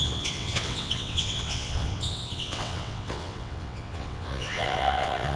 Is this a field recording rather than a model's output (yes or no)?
no